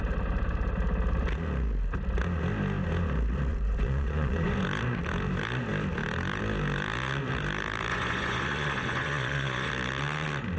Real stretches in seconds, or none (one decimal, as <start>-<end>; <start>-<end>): 0.0-3.5; 4.6-7.9; 9.7-10.6